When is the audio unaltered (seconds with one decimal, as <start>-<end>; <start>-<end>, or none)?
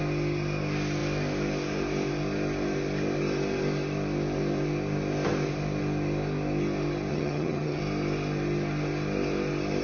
0.0-7.1; 7.8-9.8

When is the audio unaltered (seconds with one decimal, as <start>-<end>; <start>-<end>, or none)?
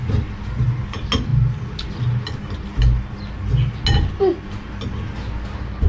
0.0-5.9